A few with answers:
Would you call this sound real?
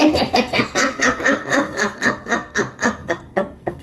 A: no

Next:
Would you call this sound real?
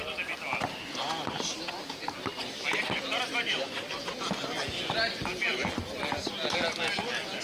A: yes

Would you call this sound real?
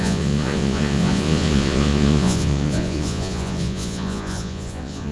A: no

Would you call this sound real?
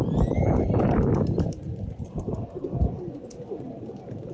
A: no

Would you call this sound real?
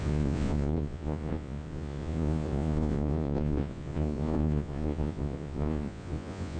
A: no